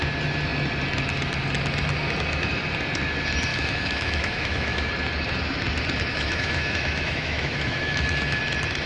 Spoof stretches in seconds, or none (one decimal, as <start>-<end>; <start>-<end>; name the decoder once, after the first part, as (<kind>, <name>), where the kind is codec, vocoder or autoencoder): 3.5-4.9 (autoencoder, DAC-VAE); 6.1-8.4